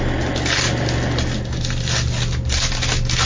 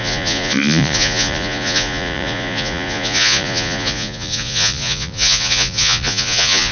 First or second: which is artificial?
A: second